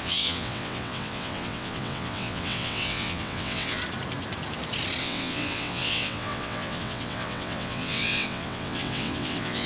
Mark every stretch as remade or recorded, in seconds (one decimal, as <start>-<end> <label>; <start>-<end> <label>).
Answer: 0.0-3.8 remade; 3.8-5.0 recorded; 5.0-9.7 remade